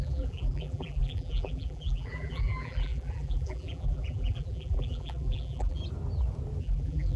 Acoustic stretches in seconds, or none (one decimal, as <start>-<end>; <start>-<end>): 5.8-6.6